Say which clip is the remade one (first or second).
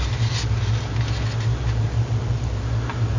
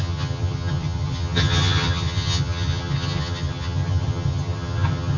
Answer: second